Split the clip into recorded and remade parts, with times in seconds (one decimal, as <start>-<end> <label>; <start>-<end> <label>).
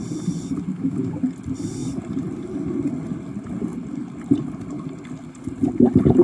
0.0-0.7 recorded; 0.7-1.2 remade; 1.2-6.2 recorded